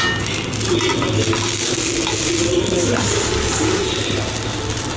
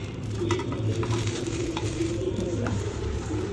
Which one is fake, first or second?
second